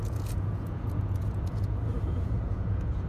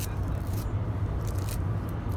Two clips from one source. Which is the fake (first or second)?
first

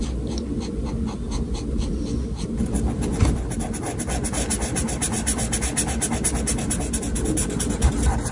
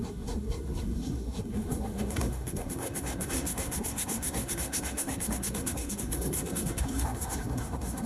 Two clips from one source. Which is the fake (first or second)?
second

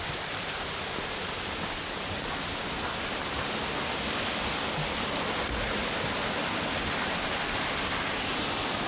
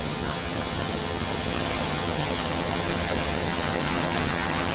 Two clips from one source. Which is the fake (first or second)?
second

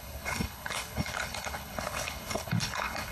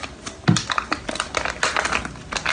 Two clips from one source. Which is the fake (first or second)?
first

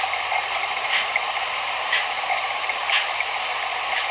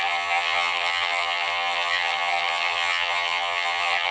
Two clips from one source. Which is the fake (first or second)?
second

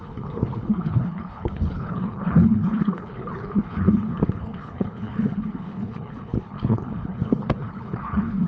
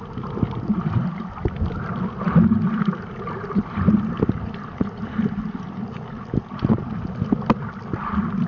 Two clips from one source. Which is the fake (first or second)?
first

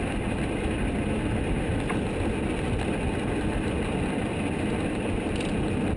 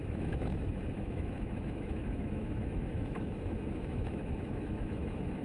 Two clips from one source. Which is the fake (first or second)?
second